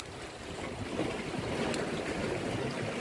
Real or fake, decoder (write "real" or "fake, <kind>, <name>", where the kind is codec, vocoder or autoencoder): real